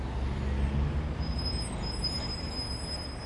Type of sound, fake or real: real